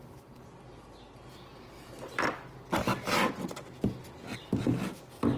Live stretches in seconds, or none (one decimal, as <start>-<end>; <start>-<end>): 0.0-2.9; 3.9-5.4